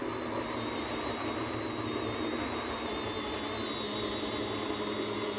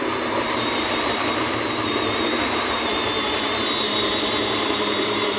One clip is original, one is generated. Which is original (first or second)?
first